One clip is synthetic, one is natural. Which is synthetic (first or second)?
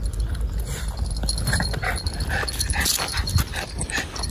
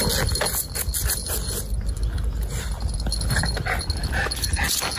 first